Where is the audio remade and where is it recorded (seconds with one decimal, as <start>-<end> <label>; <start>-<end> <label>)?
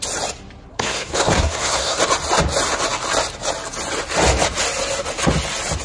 0.0-0.7 recorded; 0.7-2.0 remade; 2.0-5.8 recorded